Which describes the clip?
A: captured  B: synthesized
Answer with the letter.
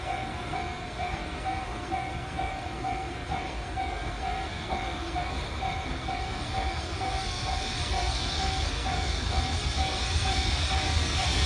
B